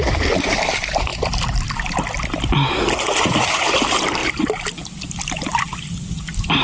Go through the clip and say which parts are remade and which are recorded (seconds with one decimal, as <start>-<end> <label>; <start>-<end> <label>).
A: 0.0-6.6 recorded